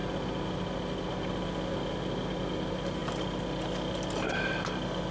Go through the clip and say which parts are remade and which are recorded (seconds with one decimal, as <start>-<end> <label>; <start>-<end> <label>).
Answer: 0.0-5.1 recorded